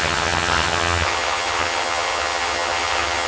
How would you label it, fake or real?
fake